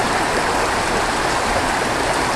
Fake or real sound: fake